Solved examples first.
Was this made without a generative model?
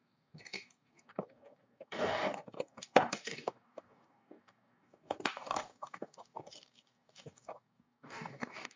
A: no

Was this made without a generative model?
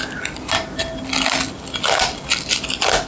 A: yes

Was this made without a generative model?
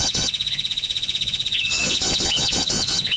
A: no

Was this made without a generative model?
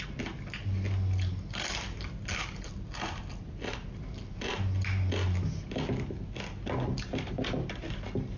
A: yes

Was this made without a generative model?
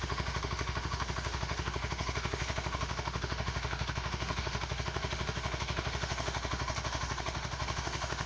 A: no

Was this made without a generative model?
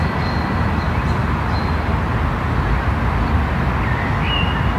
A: yes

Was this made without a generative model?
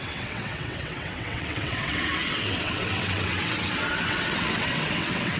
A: no